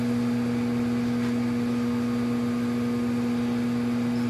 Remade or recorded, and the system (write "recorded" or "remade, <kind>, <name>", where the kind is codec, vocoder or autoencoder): recorded